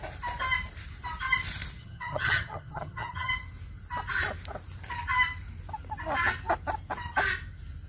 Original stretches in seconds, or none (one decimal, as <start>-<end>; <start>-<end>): 0.0-1.8; 3.3-7.9